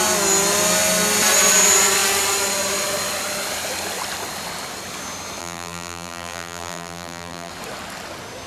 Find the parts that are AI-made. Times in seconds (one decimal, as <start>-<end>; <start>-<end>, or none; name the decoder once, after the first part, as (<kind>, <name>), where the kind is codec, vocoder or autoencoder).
5.4-7.5 (vocoder, BigVGAN v2)